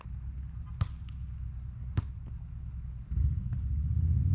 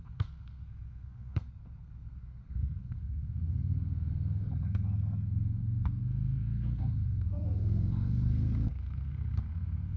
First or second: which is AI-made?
second